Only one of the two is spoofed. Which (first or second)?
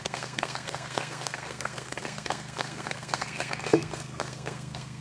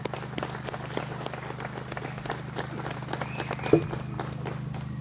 first